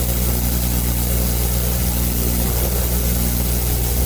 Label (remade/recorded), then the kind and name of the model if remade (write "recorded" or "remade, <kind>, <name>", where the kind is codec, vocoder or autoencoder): recorded